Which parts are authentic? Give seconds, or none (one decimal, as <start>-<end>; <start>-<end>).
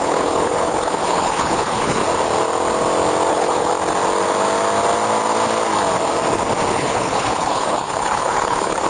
2.0-3.3; 3.7-6.7